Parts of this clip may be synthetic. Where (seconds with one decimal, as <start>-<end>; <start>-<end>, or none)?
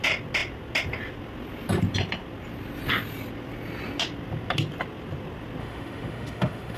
5.6-6.8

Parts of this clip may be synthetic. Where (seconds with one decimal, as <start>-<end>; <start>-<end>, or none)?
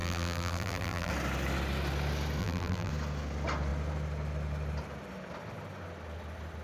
0.0-1.1; 2.4-2.9